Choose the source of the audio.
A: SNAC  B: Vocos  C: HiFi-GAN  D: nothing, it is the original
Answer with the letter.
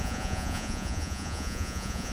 B